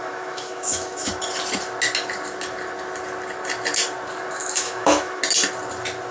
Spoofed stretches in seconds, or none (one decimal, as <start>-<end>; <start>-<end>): 0.0-1.1; 4.4-5.2